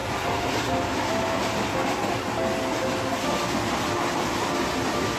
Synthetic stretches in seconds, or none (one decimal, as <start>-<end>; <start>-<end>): none